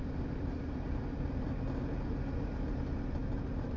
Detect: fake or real real